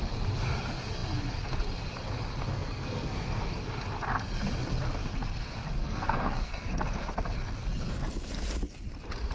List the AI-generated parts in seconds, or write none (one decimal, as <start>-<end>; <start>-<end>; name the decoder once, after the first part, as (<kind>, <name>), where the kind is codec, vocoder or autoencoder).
2.5-3.5 (codec, SNAC); 5.8-6.7